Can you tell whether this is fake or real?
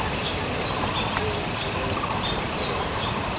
real